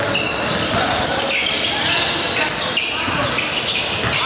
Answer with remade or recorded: recorded